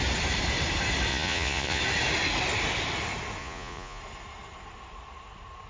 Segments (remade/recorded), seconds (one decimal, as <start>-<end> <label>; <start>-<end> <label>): 0.0-1.1 recorded; 1.1-1.8 remade; 1.8-3.4 recorded; 3.4-4.0 remade; 4.0-5.7 recorded